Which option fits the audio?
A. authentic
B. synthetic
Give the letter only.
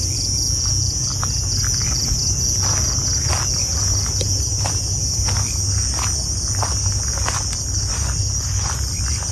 A